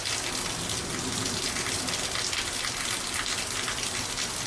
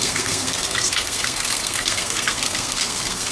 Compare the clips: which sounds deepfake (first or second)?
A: second